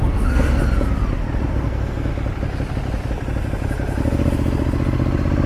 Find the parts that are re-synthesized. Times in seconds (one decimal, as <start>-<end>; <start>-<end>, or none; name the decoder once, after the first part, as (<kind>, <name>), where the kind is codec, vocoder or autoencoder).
0.0-0.6 (codec, SNAC); 1.5-2.1